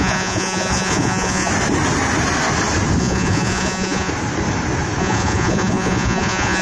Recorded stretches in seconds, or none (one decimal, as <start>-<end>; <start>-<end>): 1.5-3.0; 4.1-5.0